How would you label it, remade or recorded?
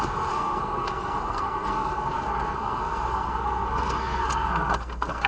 remade